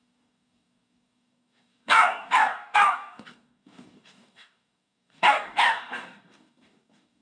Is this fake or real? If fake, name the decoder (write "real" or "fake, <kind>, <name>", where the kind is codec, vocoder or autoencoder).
fake, codec, DAC